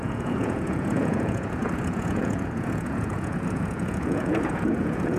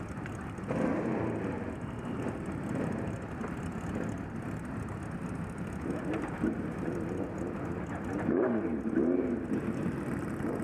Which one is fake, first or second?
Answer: first